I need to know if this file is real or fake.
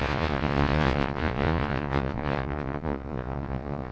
fake